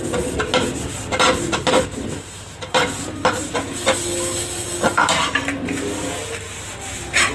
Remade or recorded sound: recorded